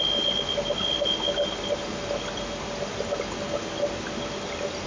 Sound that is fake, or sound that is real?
real